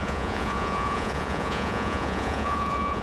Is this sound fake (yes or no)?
yes